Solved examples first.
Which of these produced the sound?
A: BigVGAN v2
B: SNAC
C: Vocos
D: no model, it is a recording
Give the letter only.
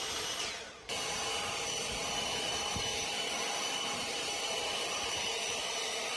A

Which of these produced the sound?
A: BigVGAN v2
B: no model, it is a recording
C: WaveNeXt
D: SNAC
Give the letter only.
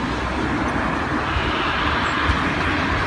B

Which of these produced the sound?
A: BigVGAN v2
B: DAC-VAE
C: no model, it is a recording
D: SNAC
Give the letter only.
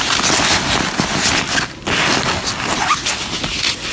C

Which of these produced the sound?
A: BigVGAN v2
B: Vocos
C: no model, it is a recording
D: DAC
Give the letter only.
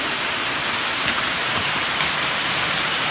A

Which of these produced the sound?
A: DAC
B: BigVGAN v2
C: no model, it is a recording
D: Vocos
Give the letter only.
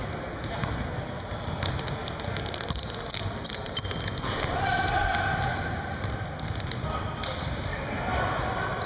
C